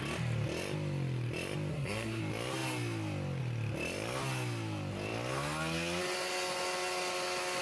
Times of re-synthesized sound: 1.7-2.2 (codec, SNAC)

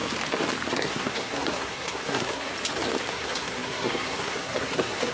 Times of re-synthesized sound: 0.7-2.5 (codec, SNAC); 3.1-5.1

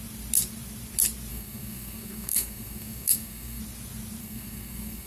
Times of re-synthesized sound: 1.3-3.6 (codec, SNAC); 4.2-5.1

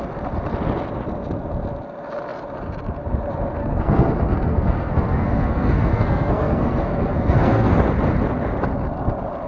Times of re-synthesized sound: 3.6-7.7 (codec, SNAC)

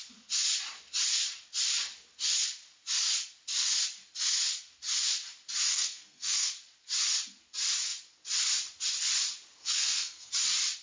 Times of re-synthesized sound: 5.7-6.5 (codec, SNAC); 9.6-10.3

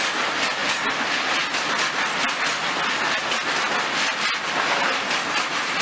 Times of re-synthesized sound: none

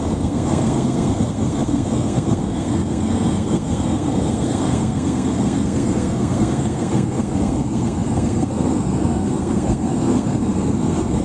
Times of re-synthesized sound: 0.0-11.2 (codec, SNAC)

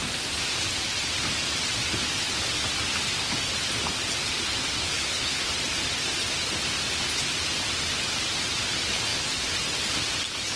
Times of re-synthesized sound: 4.7-5.4 (codec, SNAC)